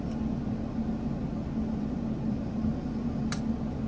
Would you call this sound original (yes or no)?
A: no